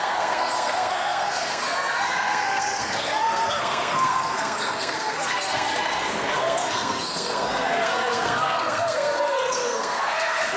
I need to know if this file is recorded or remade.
remade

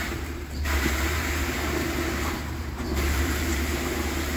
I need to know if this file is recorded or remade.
remade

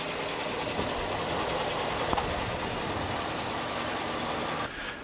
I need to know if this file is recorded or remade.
recorded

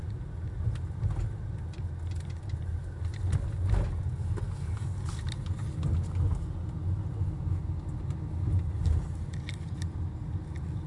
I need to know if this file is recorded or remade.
recorded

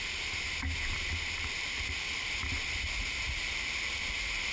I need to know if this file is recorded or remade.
recorded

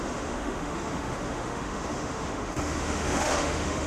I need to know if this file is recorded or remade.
remade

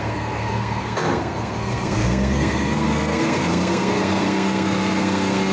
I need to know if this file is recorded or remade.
remade